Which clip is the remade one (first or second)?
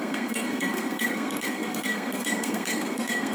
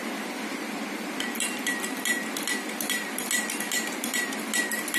first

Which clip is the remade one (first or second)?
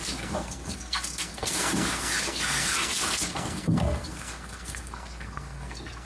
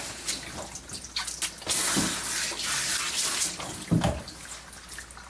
first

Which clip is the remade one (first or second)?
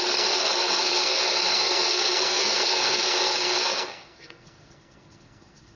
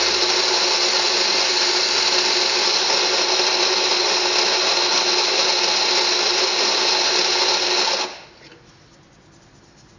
first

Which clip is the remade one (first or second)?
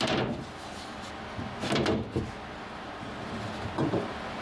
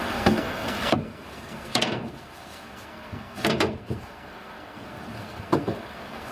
second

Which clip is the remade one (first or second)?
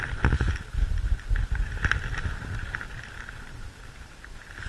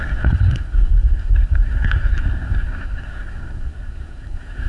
second